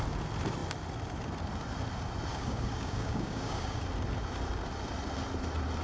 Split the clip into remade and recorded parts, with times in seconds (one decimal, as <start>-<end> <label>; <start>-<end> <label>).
0.0-2.3 recorded; 2.3-3.8 remade; 3.8-5.8 recorded